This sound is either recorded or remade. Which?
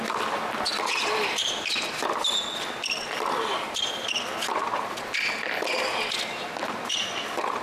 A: recorded